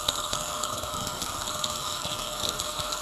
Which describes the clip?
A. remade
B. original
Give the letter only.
A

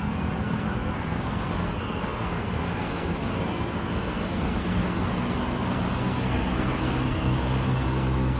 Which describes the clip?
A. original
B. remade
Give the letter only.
B